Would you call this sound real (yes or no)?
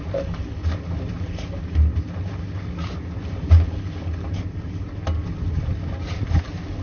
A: yes